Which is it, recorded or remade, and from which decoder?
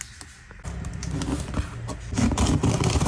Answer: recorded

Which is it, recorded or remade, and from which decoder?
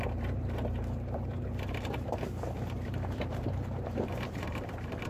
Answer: remade, vocoder, BigVGAN v2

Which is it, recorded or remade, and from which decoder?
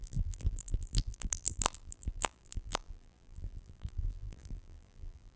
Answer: remade, vocoder, BigVGAN v2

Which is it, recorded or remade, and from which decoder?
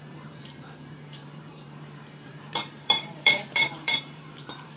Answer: remade, vocoder, BigVGAN v2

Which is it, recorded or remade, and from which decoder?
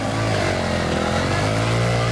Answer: recorded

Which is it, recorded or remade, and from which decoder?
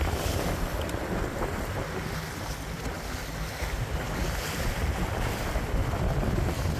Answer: recorded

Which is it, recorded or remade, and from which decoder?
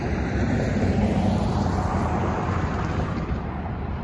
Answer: remade, vocoder, BigVGAN v2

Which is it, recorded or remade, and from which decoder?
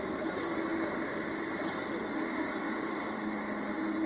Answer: recorded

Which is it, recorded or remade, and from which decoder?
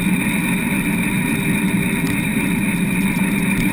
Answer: recorded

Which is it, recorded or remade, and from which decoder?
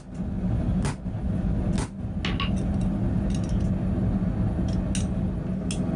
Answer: recorded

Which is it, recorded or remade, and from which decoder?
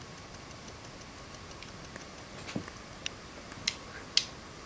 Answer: recorded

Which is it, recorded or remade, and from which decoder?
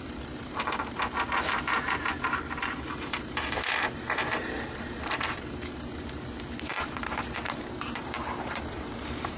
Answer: remade, vocoder, BigVGAN v2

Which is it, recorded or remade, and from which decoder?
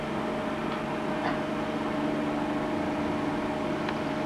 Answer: recorded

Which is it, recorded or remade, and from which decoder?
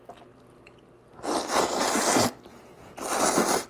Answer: recorded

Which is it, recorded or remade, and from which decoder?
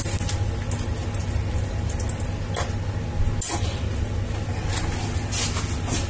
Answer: recorded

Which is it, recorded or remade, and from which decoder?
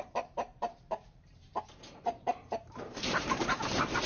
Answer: remade, vocoder, BigVGAN v2